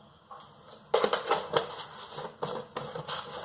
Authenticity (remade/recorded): recorded